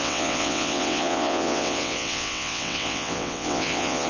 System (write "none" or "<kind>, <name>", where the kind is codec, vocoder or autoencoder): vocoder, WaveNeXt